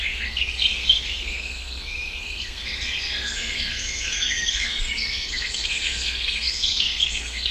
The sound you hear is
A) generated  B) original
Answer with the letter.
A